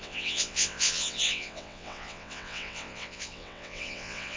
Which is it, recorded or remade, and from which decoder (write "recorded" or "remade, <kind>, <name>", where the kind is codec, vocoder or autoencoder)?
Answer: remade, vocoder, WaveNeXt